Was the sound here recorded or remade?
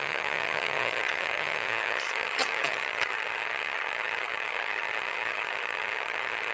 remade